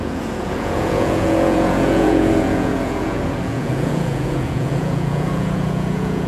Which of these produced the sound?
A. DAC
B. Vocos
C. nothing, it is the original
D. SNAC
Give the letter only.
B